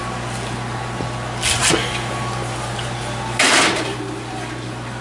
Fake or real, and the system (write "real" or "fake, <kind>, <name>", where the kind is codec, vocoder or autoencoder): real